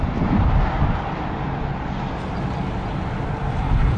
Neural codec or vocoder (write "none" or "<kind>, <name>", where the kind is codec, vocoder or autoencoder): none